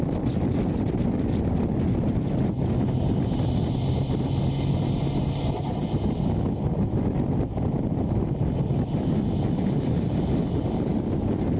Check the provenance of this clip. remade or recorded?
recorded